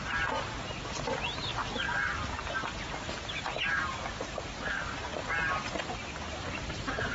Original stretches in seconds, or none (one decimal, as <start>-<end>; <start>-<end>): 0.0-7.1

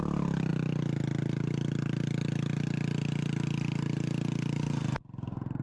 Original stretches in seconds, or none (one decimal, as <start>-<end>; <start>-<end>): 0.0-5.6

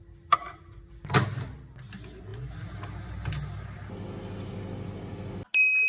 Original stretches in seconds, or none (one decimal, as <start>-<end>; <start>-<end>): 0.0-5.9

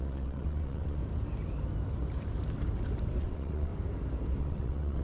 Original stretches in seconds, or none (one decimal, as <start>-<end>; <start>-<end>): 1.0-3.2; 3.7-4.4

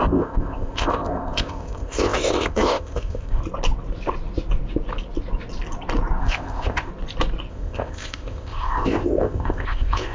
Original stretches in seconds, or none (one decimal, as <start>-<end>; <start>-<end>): 3.4-6.2; 6.9-7.5

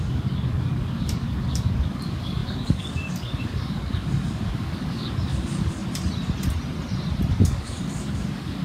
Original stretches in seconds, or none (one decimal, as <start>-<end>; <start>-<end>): 5.8-7.3

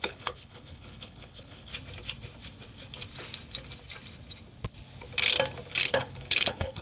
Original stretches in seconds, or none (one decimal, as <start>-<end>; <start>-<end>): 1.7-5.8